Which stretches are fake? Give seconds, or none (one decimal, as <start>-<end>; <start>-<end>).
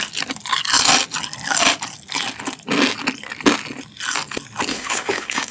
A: 4.7-5.5